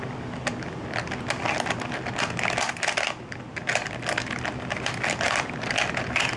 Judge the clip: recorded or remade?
recorded